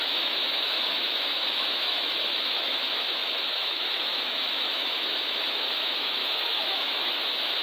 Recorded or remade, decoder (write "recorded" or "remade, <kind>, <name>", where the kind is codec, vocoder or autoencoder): remade, autoencoder, DAC-VAE